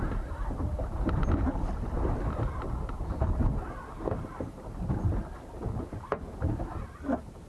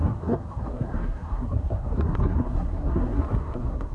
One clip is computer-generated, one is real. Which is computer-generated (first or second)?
second